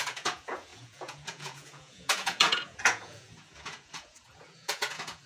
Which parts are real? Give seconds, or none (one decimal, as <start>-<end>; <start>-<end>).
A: none